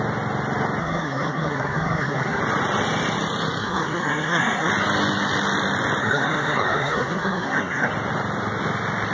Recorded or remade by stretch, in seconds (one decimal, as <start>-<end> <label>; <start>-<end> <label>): 0.0-0.8 recorded; 0.8-2.4 remade; 2.4-3.6 recorded; 3.6-4.7 remade; 4.7-6.0 recorded; 6.0-7.9 remade; 7.9-9.1 recorded